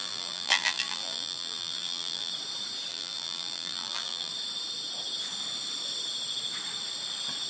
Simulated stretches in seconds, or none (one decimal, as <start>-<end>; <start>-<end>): 0.0-2.3; 2.9-4.3